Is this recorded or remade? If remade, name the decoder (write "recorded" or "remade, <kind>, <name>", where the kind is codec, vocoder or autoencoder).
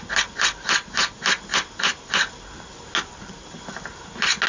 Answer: recorded